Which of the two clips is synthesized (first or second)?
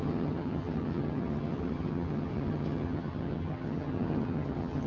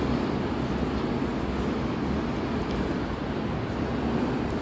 first